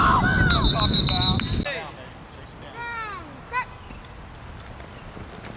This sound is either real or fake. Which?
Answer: real